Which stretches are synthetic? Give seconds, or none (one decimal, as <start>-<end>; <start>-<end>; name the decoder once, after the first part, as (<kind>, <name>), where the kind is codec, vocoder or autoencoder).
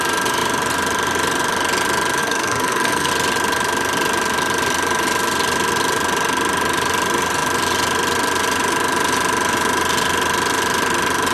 2.2-3.1 (codec, SNAC)